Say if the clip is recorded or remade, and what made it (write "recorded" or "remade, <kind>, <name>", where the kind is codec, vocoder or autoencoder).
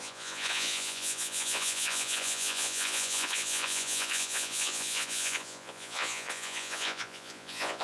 remade, vocoder, Vocos